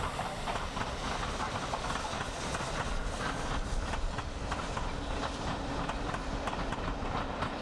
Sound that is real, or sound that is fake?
real